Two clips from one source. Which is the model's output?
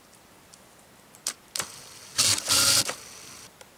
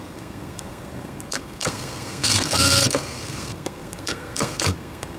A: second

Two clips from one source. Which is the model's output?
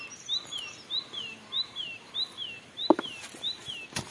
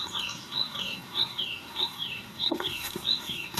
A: second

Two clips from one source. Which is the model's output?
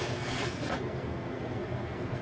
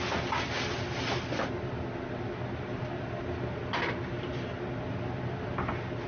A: first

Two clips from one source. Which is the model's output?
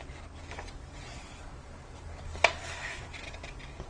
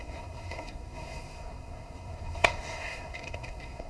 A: second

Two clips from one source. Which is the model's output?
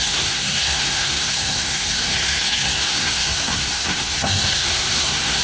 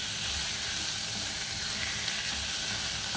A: first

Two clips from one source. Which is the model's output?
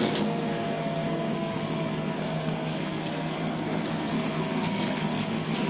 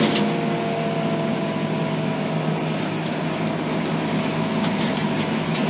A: first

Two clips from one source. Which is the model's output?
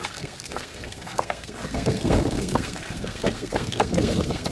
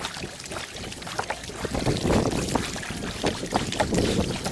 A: first